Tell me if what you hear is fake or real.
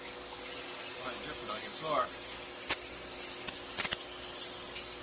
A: real